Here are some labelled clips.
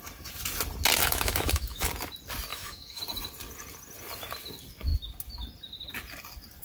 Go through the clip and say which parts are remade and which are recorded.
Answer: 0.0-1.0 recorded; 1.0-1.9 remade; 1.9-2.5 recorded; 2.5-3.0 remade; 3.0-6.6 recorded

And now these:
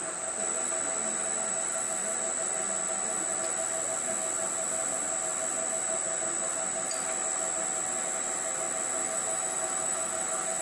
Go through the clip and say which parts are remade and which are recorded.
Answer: 0.0-9.0 recorded; 9.0-10.6 remade

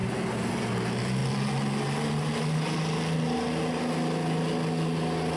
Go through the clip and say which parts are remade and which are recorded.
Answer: 0.0-5.4 recorded

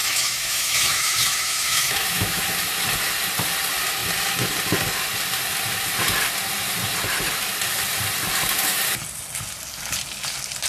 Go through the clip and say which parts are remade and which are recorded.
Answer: 0.0-2.4 remade; 2.4-10.7 recorded

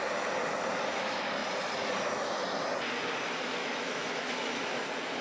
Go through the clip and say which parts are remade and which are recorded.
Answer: 0.0-3.6 recorded; 3.6-4.8 remade; 4.8-5.2 recorded

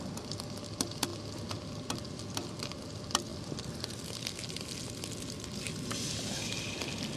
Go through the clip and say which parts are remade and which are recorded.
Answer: 0.0-7.2 recorded

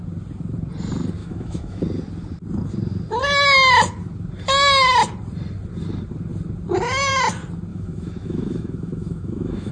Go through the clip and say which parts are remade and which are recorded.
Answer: 0.0-1.2 recorded; 1.2-1.8 remade; 1.8-7.7 recorded; 7.7-9.7 remade

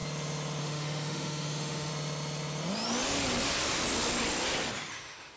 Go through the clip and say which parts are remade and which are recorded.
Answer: 0.0-0.6 recorded; 0.6-1.9 remade; 1.9-4.9 recorded; 4.9-5.4 remade